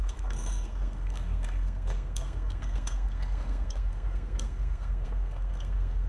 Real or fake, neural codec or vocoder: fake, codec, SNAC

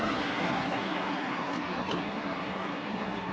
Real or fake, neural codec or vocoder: fake, codec, SNAC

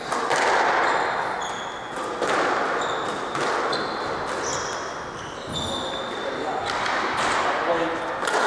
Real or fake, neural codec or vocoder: real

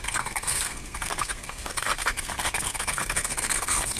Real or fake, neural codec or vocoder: fake, codec, SNAC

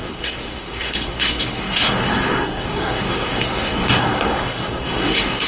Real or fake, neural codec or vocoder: fake, codec, SNAC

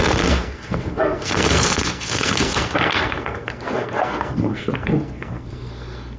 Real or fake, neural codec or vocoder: fake, codec, SNAC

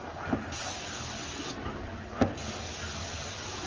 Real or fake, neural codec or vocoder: real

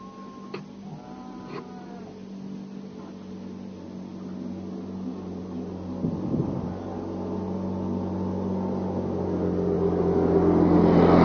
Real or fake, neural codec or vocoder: real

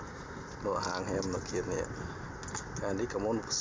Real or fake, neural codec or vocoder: real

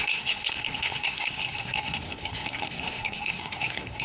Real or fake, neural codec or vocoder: fake, codec, SNAC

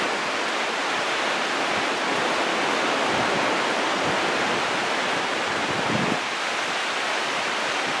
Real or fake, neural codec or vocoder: real